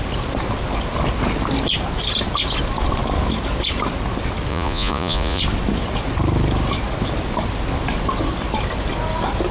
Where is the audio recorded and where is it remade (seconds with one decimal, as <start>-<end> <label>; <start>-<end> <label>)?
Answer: 0.0-4.5 recorded; 4.5-5.4 remade; 5.4-9.5 recorded